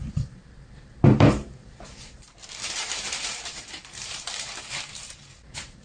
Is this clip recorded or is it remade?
remade